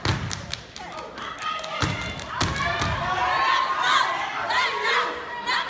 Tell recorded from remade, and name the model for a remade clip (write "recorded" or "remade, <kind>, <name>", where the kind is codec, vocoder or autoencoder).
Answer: recorded